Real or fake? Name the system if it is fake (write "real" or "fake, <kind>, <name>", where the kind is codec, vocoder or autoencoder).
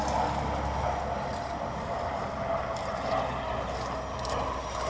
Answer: real